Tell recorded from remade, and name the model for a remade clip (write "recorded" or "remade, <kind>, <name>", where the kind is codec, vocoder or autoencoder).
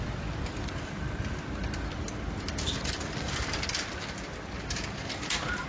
recorded